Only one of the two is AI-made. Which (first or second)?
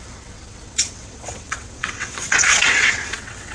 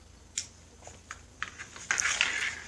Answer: first